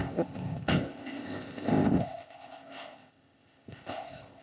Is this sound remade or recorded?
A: remade